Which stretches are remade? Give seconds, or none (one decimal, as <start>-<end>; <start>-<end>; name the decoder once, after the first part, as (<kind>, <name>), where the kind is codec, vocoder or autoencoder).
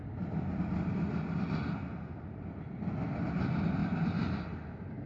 3.8-4.3 (vocoder, BigVGAN v2)